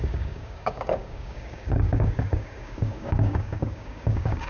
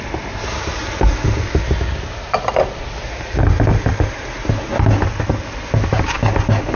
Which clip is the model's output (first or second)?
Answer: first